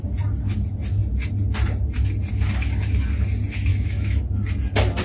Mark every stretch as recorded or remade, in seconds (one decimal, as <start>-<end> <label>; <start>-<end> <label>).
0.0-3.7 recorded; 3.7-4.2 remade; 4.2-5.0 recorded